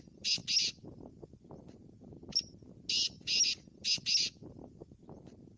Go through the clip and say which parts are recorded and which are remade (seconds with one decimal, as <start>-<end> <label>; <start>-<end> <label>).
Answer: 0.0-5.6 recorded